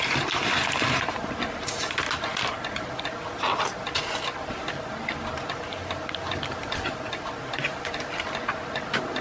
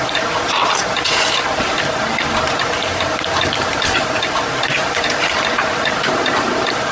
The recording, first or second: first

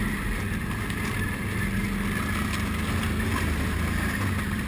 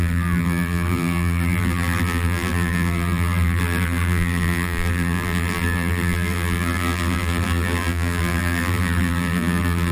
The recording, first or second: first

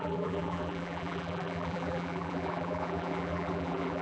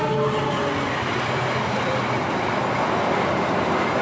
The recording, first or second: second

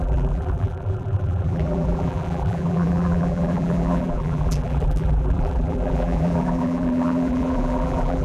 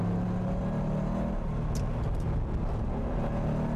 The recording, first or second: second